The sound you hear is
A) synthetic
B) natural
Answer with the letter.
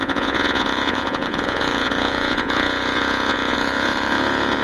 A